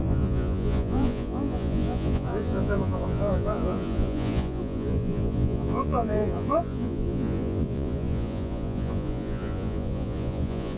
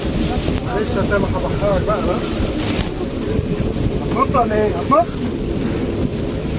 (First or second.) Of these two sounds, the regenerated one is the first